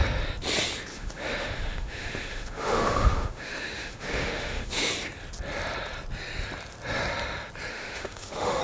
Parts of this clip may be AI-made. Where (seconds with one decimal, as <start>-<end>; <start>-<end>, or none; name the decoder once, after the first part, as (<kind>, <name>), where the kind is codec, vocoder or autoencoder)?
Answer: 0.9-4.9 (autoencoder, DAC-VAE); 7.7-8.6